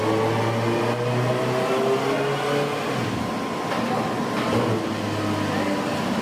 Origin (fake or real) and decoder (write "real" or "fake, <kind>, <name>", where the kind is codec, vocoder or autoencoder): real